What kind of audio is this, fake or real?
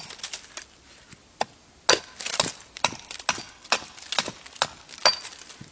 real